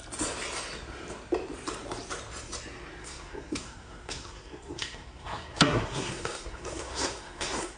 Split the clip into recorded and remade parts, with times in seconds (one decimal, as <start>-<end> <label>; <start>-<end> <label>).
0.0-3.0 recorded; 3.0-7.8 remade